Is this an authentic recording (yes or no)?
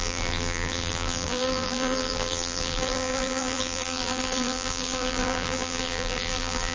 no